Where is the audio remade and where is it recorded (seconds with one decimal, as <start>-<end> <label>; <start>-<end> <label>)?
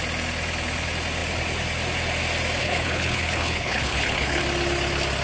0.0-2.6 recorded; 2.6-4.4 remade; 4.4-5.2 recorded